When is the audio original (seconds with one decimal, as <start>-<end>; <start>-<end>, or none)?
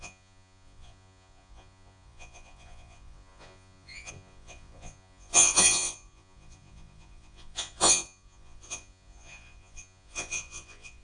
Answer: none